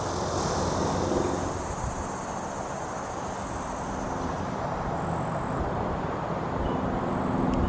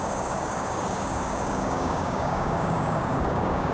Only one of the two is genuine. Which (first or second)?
first